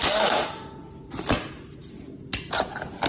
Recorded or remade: recorded